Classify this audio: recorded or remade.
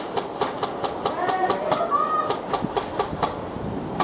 recorded